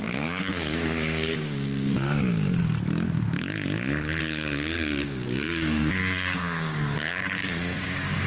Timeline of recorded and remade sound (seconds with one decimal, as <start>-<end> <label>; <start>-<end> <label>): 0.0-2.6 remade; 2.6-4.2 recorded; 4.2-8.3 remade